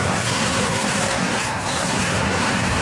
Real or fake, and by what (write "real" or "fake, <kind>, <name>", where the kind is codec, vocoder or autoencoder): fake, codec, SNAC